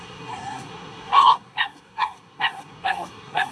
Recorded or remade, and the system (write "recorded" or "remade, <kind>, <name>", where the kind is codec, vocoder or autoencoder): remade, codec, SNAC